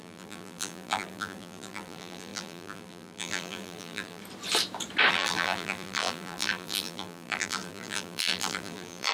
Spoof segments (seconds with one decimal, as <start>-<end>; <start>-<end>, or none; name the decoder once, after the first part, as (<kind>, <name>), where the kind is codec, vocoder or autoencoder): 0.0-4.2 (vocoder, BigVGAN v2); 5.1-9.1